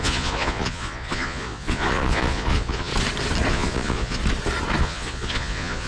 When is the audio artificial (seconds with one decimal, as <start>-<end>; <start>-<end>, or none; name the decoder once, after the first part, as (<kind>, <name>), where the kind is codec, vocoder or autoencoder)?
0.0-2.9 (vocoder, Vocos); 3.5-4.2; 4.8-5.9